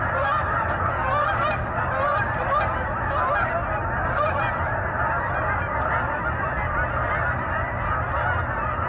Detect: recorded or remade recorded